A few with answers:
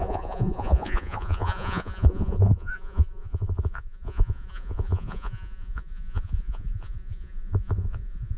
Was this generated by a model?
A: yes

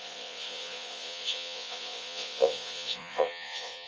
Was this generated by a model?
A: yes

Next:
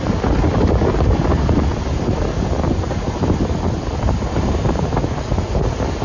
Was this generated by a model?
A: no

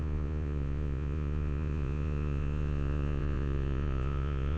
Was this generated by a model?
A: yes